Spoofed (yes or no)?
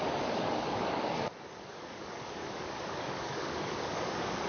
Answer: yes